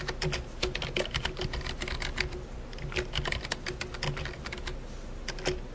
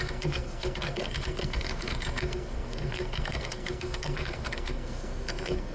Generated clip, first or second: second